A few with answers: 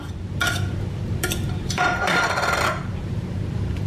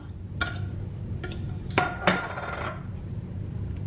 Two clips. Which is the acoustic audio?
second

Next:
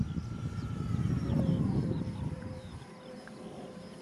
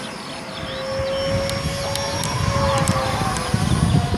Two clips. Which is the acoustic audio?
second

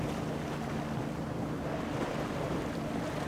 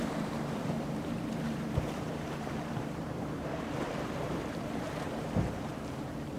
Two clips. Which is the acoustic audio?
first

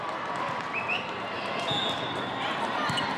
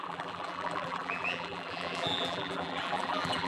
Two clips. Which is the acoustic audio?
first